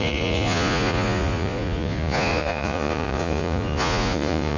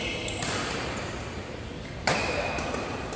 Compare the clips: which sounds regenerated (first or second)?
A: first